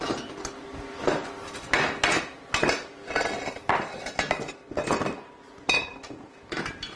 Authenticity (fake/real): real